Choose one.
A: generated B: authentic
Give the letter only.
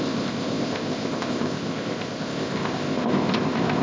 A